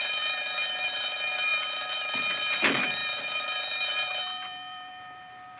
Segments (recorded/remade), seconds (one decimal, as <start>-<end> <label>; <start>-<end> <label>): 0.0-5.6 recorded